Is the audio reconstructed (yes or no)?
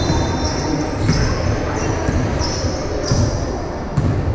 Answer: no